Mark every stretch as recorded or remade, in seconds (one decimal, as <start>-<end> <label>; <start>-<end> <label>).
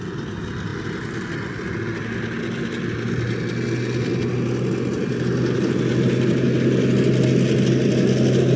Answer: 0.0-8.6 recorded